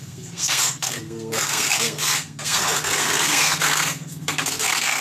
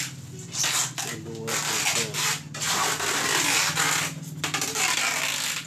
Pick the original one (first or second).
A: second